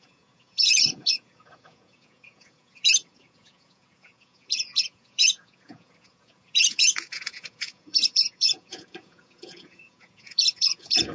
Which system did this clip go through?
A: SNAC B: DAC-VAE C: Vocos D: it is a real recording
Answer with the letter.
C